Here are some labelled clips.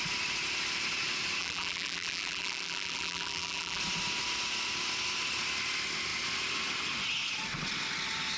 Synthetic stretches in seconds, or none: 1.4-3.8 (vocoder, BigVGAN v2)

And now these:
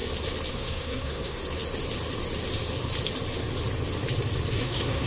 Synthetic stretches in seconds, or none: 0.5-1.4 (codec, SNAC); 4.5-5.1

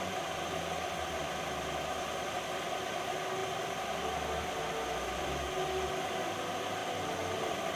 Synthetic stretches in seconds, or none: none

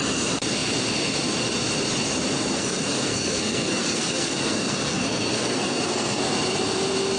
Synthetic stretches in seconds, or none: 2.5-6.2 (codec, SNAC)

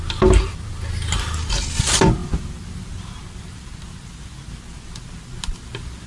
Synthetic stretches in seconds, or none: none